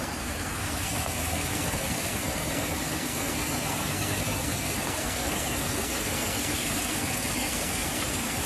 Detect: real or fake fake